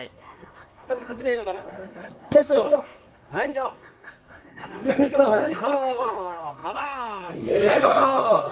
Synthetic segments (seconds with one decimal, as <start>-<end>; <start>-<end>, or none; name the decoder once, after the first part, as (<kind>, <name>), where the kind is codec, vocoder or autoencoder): 0.0-8.5 (codec, SNAC)